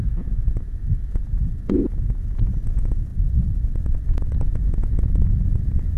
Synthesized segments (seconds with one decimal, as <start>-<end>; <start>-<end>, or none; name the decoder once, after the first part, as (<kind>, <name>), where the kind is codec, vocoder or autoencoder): 0.0-3.1 (vocoder, Vocos); 4.5-6.0

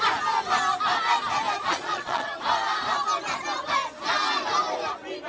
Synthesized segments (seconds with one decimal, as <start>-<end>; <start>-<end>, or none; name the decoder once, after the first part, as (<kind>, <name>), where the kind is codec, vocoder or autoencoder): 1.6-2.4 (vocoder, Vocos)

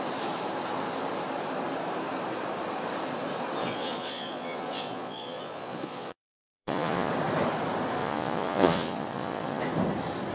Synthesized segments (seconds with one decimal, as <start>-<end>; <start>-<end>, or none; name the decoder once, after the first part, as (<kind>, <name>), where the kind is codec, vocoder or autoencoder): 3.6-7.1 (vocoder, Vocos); 8.0-9.6

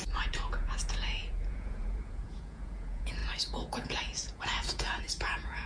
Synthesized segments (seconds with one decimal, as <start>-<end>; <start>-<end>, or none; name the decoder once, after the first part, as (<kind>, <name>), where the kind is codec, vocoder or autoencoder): 0.0-5.7 (vocoder, Vocos)

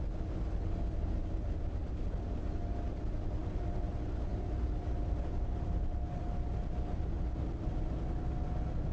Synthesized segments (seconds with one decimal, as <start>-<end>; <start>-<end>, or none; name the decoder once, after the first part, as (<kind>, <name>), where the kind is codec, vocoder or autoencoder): none